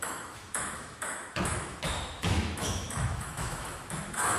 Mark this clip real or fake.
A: fake